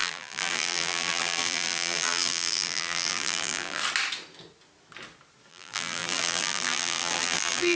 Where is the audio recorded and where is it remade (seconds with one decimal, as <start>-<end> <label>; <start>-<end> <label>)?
0.0-3.8 remade; 3.8-5.5 recorded; 5.5-7.8 remade

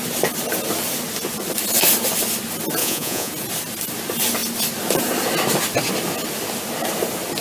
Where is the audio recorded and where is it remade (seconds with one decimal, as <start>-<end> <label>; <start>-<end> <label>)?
0.0-2.8 recorded; 2.8-3.3 remade; 3.3-7.4 recorded

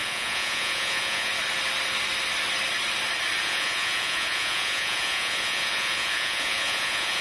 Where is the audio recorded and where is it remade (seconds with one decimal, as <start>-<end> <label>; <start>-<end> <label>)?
0.0-1.3 remade; 1.3-3.4 recorded; 3.4-7.2 remade

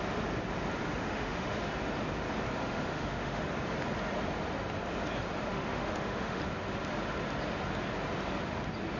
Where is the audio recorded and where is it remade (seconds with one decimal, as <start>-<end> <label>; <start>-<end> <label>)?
0.0-1.0 recorded; 1.0-1.7 remade; 1.7-2.6 recorded; 2.6-3.5 remade; 3.5-5.5 recorded; 5.5-6.4 remade; 6.4-9.0 recorded

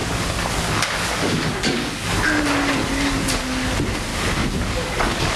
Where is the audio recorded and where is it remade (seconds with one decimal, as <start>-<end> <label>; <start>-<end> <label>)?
0.0-2.2 remade; 2.2-4.1 recorded; 4.1-5.4 remade

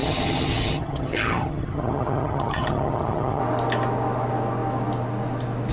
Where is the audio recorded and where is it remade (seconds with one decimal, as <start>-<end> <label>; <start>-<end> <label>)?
0.0-3.4 remade; 3.4-5.7 recorded